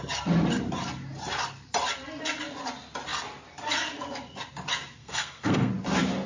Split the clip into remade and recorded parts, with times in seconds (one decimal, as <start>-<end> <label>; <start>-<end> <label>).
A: 0.0-5.0 recorded; 5.0-5.7 remade; 5.7-6.3 recorded